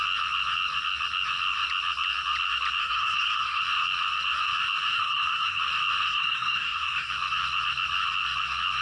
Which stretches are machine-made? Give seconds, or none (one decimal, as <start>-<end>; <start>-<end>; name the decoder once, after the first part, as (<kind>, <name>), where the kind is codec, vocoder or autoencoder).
2.8-3.6 (codec, SNAC); 4.9-5.6; 6.1-7.1